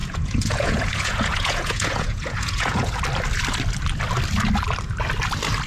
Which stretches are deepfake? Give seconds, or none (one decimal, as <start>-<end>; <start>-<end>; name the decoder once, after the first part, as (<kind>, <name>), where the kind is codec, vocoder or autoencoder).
0.0-3.0 (vocoder, Vocos)

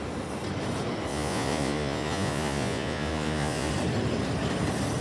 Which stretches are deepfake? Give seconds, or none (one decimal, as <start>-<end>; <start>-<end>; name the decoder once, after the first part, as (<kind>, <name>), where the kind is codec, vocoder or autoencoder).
1.1-3.7 (vocoder, Vocos)

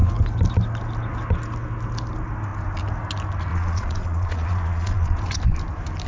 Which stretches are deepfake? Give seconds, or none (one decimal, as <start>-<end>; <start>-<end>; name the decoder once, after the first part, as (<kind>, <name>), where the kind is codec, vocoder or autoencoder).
3.5-5.4 (vocoder, Vocos)

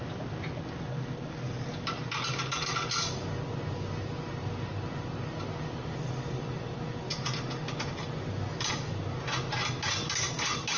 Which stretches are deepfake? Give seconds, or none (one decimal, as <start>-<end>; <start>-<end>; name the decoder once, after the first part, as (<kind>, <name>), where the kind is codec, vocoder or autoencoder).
none